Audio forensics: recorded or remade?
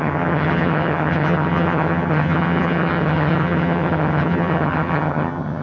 remade